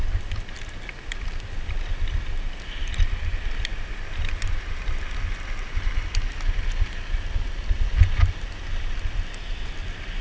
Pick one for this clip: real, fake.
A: real